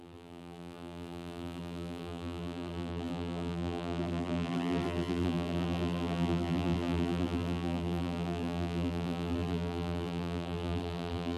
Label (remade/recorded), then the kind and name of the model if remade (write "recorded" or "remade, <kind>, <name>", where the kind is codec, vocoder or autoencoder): remade, vocoder, BigVGAN v2